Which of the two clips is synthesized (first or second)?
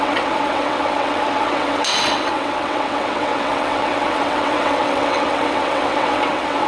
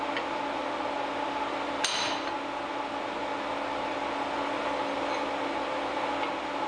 first